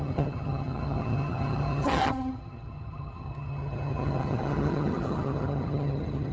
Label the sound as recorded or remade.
remade